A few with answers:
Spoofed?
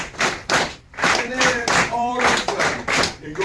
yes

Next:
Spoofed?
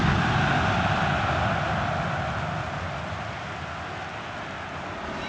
no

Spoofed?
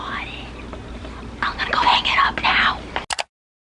no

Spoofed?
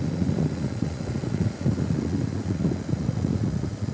yes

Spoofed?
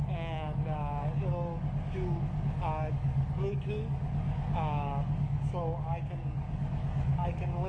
yes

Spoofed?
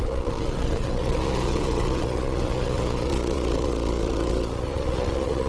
yes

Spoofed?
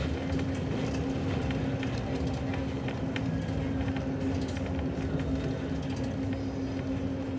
no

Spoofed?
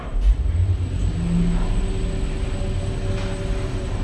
no